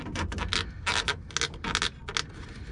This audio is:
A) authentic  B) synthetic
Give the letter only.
A